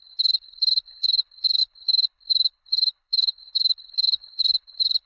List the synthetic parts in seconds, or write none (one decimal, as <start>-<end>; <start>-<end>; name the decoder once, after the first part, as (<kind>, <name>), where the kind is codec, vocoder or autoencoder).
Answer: 0.0-5.1 (codec, HILCodec)